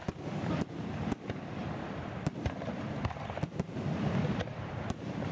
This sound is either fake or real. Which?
fake